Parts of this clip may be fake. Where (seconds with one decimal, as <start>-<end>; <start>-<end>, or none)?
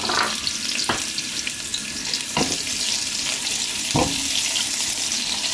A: none